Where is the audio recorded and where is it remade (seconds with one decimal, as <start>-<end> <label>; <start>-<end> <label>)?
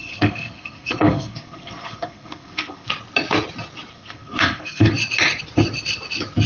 0.0-2.9 remade; 2.9-3.9 recorded; 3.9-4.9 remade; 4.9-6.5 recorded